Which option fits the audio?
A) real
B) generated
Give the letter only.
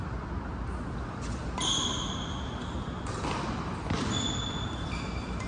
A